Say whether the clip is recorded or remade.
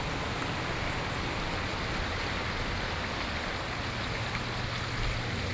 recorded